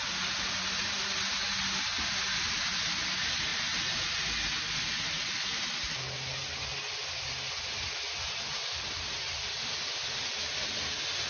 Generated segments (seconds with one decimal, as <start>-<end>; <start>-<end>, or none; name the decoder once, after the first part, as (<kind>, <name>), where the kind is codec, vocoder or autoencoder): none